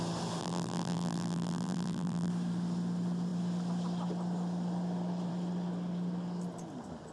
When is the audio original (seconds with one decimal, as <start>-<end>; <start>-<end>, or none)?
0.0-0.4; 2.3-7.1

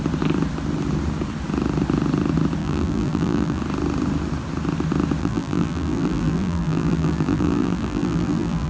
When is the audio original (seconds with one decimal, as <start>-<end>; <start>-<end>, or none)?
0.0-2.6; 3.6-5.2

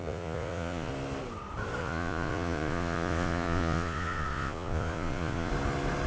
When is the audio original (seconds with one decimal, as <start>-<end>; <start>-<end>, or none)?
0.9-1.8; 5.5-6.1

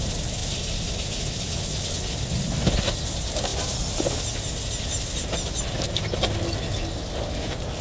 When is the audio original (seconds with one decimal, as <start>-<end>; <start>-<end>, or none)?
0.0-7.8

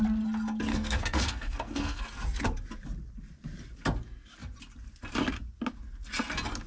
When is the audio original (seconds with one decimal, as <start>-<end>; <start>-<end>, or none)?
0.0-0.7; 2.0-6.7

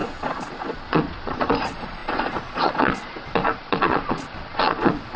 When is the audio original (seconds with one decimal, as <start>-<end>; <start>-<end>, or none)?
none

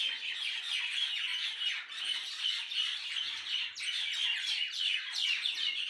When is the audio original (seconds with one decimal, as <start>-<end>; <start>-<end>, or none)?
1.3-4.8

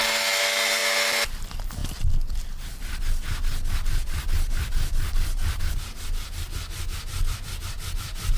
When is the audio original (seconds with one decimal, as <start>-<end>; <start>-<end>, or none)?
0.0-8.4